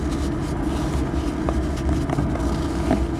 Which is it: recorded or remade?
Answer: recorded